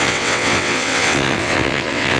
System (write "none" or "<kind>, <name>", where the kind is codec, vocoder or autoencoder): vocoder, WaveNeXt